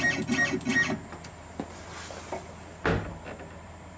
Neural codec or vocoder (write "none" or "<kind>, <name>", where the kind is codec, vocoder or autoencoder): none